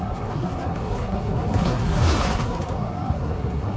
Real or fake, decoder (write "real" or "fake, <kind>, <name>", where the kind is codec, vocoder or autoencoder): fake, codec, SNAC